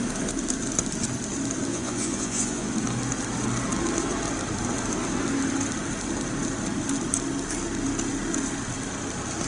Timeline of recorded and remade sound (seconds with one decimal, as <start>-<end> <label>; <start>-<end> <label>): 0.0-1.7 recorded; 1.7-2.7 remade; 2.7-9.5 recorded